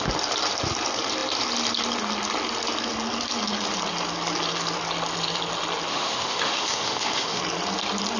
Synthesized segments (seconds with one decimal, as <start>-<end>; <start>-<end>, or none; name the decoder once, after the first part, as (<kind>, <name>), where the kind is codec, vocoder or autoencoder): 5.9-7.4 (autoencoder, DAC-VAE)